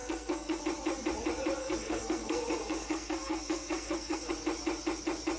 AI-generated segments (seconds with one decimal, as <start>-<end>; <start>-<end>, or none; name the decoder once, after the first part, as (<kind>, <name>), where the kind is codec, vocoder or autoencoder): 0.0-0.6 (codec, SNAC); 1.6-4.3